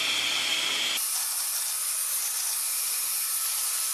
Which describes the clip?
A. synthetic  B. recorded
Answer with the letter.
B